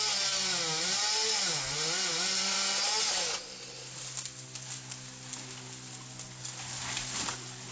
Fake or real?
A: real